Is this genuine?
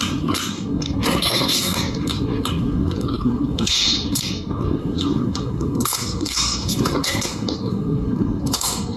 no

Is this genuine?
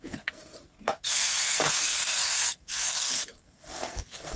no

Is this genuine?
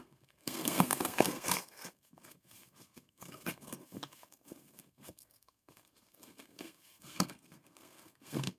no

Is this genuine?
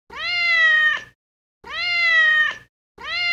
yes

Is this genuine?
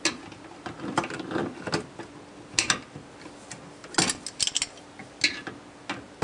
yes